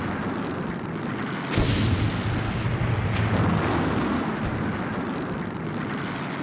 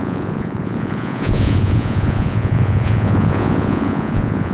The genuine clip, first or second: first